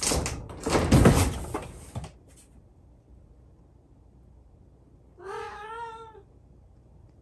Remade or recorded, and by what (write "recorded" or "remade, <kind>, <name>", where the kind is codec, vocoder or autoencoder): recorded